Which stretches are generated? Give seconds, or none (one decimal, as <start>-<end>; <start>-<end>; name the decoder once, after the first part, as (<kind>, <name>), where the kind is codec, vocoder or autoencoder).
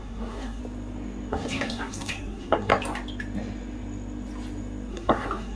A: 0.0-0.6 (codec, SNAC); 1.3-2.7; 4.9-5.6